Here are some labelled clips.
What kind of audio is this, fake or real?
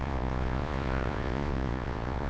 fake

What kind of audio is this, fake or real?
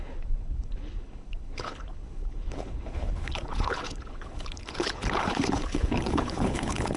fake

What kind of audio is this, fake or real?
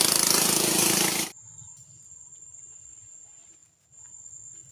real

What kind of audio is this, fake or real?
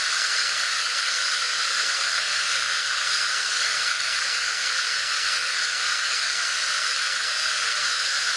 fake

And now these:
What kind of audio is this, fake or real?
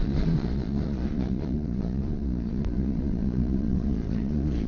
fake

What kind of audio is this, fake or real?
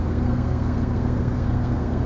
fake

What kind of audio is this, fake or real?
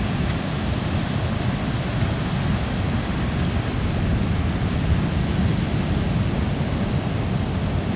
real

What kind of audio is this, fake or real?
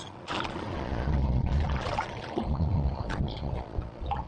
fake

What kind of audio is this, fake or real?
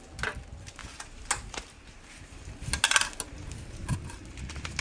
real